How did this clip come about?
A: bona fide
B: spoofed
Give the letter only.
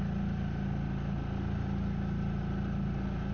A